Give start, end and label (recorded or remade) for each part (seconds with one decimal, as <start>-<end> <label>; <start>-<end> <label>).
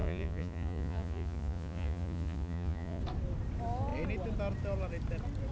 0.0-3.0 remade; 3.0-5.5 recorded